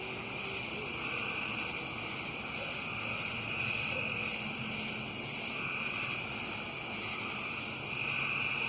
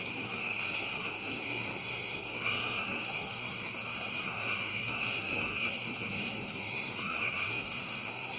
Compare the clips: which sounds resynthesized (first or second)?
second